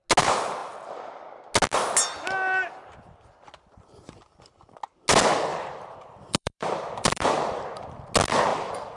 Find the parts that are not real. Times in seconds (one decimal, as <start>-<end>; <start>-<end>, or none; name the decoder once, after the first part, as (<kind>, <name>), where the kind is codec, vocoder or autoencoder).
5.5-7.9 (vocoder, BigVGAN v2); 8.5-9.0